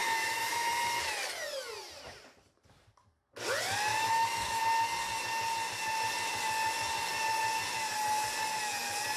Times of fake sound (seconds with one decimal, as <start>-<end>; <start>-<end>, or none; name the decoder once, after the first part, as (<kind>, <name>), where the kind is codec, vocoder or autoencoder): 0.0-0.7 (autoencoder, DAC-VAE); 3.9-4.6